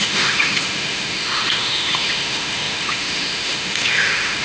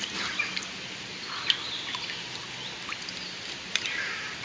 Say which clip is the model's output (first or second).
first